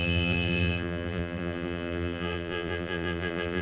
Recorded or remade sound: remade